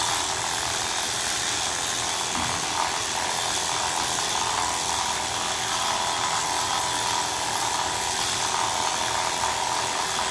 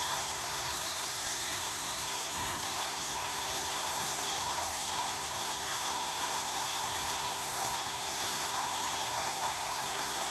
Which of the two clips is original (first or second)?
first